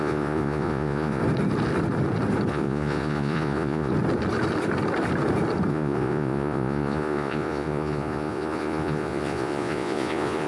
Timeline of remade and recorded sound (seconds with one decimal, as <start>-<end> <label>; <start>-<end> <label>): 0.0-1.2 remade; 1.2-2.5 recorded; 2.5-3.9 remade; 3.9-5.7 recorded; 5.7-10.5 remade